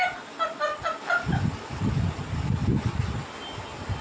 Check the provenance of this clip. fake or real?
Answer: real